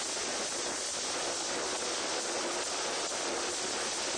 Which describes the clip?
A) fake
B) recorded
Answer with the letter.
B